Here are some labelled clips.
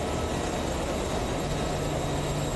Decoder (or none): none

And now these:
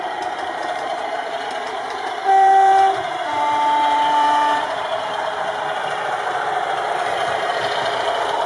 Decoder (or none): vocoder, BigVGAN v2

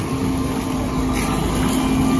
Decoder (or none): none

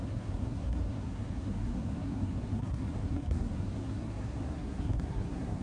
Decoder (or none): codec, SNAC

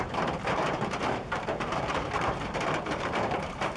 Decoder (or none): vocoder, BigVGAN v2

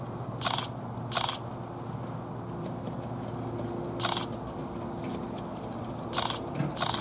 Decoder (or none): none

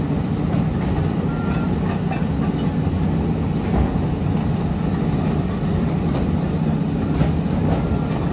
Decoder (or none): none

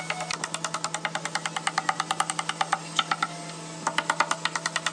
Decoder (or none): none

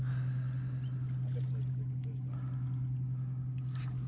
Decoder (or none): none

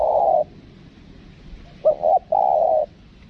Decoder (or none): none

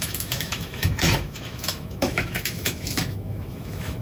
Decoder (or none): autoencoder, DAC-VAE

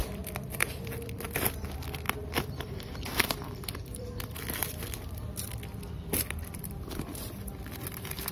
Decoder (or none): vocoder, BigVGAN v2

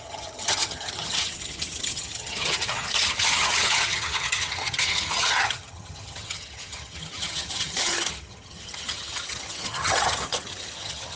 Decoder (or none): vocoder, HiFi-GAN